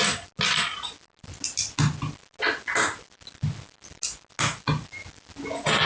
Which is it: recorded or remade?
recorded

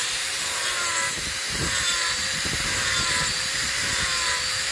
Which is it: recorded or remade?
remade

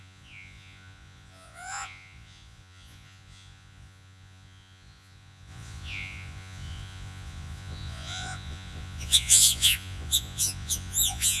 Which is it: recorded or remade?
remade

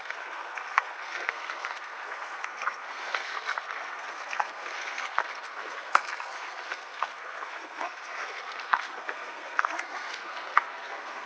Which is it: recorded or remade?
remade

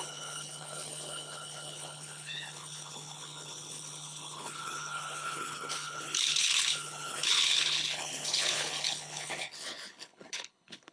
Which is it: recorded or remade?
remade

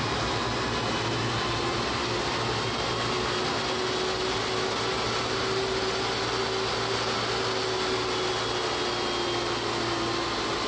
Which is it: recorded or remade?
recorded